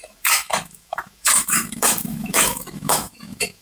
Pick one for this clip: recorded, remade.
remade